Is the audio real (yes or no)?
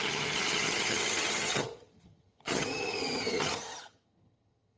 no